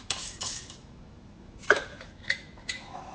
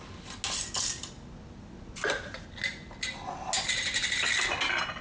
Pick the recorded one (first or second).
second